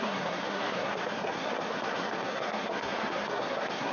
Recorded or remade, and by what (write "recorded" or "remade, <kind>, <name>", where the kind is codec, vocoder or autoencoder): remade, codec, SNAC